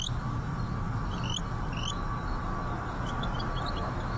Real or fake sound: real